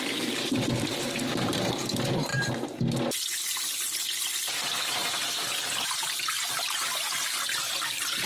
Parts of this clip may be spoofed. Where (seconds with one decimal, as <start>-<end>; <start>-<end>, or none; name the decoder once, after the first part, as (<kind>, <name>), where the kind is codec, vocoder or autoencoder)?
none